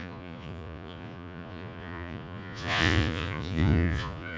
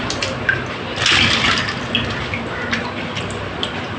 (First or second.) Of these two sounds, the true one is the second